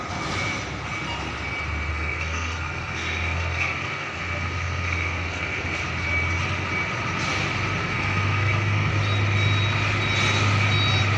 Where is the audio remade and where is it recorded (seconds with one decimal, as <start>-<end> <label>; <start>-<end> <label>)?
0.0-1.9 recorded; 1.9-5.8 remade; 5.8-7.8 recorded; 7.8-8.9 remade; 8.9-11.2 recorded